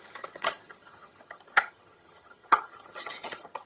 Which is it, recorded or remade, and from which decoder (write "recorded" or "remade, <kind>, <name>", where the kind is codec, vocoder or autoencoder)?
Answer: remade, vocoder, HiFi-GAN